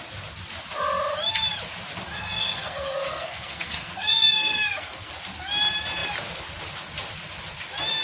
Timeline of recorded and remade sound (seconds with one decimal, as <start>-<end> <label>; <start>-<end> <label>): 0.0-2.1 recorded; 2.1-5.1 remade; 5.1-8.0 recorded